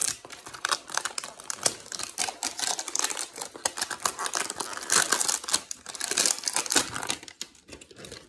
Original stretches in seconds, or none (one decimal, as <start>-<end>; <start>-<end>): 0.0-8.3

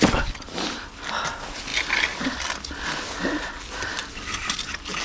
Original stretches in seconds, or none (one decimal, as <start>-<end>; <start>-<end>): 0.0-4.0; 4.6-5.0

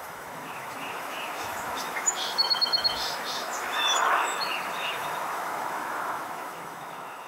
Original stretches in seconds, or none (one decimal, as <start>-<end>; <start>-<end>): none

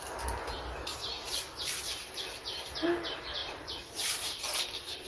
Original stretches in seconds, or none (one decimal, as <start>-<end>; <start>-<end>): 0.0-0.9; 1.4-3.4; 4.4-5.1